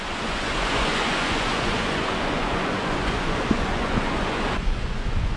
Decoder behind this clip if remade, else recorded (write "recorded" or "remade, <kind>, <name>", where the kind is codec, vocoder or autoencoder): remade, vocoder, Vocos